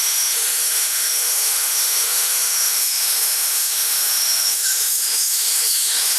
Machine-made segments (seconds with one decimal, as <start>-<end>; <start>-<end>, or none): 0.0-6.2